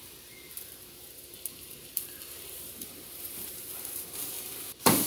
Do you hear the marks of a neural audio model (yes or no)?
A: yes